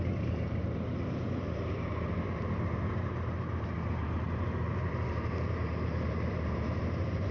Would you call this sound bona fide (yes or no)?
no